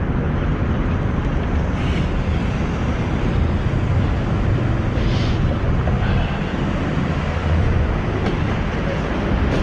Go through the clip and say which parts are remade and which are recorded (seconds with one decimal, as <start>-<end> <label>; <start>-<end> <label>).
0.0-5.1 recorded; 5.1-5.7 remade; 5.7-7.4 recorded; 7.4-7.9 remade; 7.9-9.6 recorded

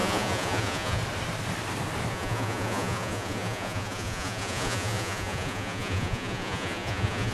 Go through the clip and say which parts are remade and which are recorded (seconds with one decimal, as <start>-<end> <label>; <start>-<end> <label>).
0.0-1.0 remade; 1.0-2.1 recorded; 2.1-7.3 remade

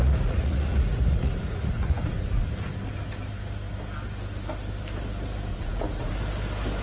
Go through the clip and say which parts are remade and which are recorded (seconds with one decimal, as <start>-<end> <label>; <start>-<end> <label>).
0.0-2.4 remade; 2.4-5.5 recorded; 5.5-6.1 remade; 6.1-6.8 recorded

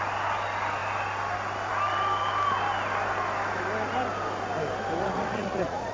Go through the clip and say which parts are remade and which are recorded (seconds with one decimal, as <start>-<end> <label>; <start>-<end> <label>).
0.0-5.0 recorded; 5.0-5.9 remade

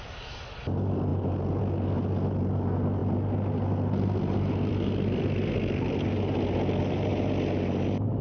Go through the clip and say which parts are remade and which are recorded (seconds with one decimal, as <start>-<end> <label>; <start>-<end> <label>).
0.0-8.2 recorded

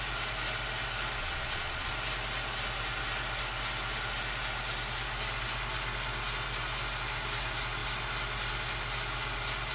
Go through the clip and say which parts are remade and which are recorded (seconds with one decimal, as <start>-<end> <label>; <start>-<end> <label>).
0.0-1.2 recorded; 1.2-1.9 remade; 1.9-9.7 recorded

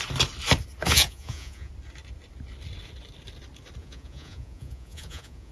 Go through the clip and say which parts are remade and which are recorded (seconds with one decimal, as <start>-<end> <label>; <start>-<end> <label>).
0.0-0.8 recorded; 0.8-1.7 remade; 1.7-3.8 recorded; 3.8-5.5 remade